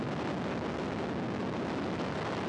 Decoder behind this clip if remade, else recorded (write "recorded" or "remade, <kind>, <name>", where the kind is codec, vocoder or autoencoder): recorded